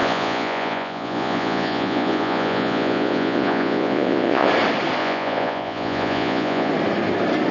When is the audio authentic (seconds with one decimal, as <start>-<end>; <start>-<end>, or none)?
4.5-5.0; 6.7-7.5